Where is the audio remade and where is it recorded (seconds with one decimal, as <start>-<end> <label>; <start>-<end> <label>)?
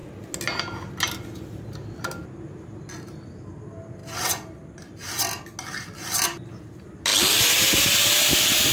0.0-8.7 recorded